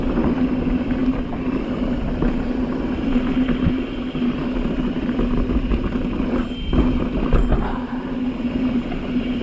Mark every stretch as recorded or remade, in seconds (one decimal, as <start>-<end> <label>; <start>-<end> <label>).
0.0-9.4 recorded